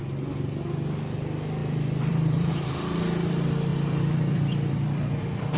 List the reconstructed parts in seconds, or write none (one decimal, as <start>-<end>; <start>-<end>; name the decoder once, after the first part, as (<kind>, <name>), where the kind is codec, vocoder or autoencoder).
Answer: 1.6-2.7 (vocoder, BigVGAN v2); 3.7-5.6

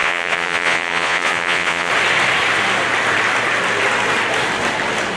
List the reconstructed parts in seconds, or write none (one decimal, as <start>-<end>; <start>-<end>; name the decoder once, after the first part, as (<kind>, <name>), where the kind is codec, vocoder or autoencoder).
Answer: 0.0-1.9 (vocoder, Vocos)

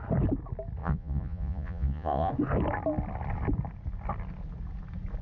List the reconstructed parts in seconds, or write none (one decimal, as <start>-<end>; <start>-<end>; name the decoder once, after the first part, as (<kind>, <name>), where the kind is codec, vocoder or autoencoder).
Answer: 0.8-2.3 (vocoder, Vocos)

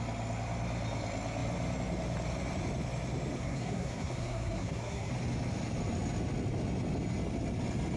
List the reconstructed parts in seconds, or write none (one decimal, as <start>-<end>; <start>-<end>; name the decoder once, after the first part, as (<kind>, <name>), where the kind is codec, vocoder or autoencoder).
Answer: 3.4-5.1 (codec, SNAC)

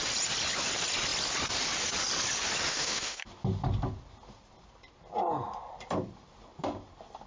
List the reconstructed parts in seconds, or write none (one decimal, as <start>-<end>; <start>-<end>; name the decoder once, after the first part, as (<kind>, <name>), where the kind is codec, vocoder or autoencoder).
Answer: 2.7-3.2 (autoencoder, DAC-VAE)

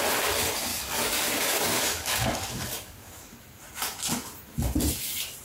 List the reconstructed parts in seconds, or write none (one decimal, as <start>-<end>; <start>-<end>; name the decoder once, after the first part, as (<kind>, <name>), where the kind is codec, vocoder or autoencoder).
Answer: 0.7-3.2 (codec, DAC)

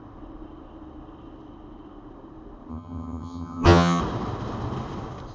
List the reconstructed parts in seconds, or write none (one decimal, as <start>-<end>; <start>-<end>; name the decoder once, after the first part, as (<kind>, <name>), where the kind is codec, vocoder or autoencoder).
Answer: 2.7-4.0 (vocoder, HiFi-GAN)

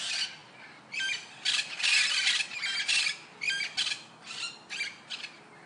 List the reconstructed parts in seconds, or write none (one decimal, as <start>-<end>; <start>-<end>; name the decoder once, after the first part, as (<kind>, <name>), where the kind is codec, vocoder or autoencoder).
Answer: none